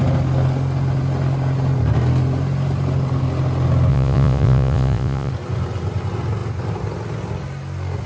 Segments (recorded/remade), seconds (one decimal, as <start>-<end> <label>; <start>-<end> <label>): 0.0-3.9 recorded; 3.9-5.3 remade; 5.3-8.1 recorded